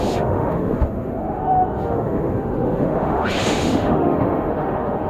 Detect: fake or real fake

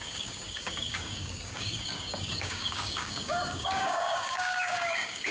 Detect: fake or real fake